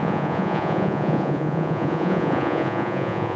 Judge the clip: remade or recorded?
remade